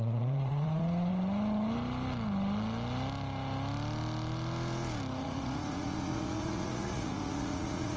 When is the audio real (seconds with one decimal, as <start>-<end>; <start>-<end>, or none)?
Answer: 1.1-5.2